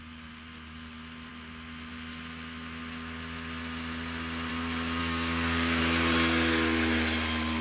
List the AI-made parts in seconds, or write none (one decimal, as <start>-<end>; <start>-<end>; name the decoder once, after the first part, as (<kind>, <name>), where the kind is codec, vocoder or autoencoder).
5.0-5.8 (codec, DAC)